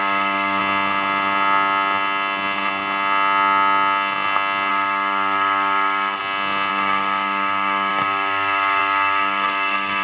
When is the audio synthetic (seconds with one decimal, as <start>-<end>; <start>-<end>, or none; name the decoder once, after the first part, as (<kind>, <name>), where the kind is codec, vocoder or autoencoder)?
0.0-0.6 (codec, DAC); 4.7-6.2; 6.7-10.0

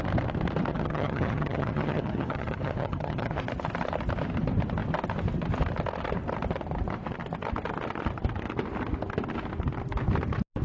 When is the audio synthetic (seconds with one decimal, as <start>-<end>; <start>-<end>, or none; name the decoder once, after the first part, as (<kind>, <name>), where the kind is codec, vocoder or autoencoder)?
0.7-3.4 (vocoder, HiFi-GAN)

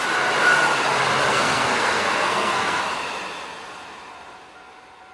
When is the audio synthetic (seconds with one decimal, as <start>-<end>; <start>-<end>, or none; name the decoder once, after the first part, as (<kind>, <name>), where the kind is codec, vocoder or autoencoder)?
1.3-2.8 (codec, SNAC)

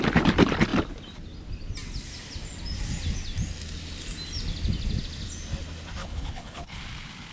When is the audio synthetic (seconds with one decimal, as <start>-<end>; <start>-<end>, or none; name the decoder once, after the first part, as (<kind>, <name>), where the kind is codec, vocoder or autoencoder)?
6.0-6.8 (codec, HILCodec)

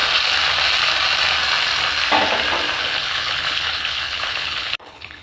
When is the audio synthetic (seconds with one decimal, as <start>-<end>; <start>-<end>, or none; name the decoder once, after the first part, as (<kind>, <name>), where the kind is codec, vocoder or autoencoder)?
2.8-5.2 (codec, HILCodec)

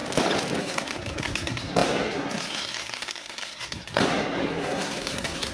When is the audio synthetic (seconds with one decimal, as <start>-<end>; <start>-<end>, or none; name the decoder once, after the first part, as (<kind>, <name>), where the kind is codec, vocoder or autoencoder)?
0.6-5.5 (codec, SNAC)